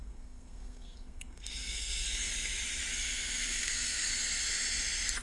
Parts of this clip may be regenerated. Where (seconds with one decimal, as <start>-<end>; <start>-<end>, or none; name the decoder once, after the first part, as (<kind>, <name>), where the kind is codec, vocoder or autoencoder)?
0.0-2.3 (codec, SNAC); 2.9-4.2